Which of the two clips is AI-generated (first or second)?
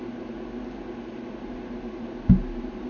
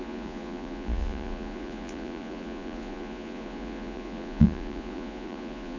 second